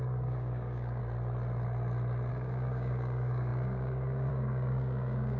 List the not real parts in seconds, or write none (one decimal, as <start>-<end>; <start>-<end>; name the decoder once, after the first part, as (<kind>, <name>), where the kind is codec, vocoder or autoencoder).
0.0-1.0 (codec, DAC); 2.3-5.4